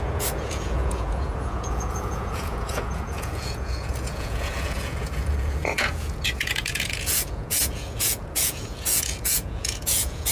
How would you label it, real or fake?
fake